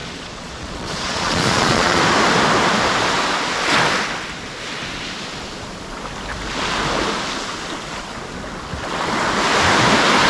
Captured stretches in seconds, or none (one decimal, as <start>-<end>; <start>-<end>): 2.0-10.3